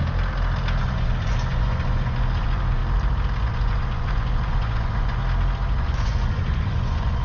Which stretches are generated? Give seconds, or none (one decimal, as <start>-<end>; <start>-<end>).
0.8-2.8; 3.4-5.2; 5.8-7.2